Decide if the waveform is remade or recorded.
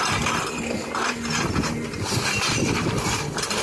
remade